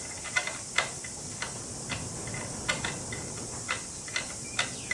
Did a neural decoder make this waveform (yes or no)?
no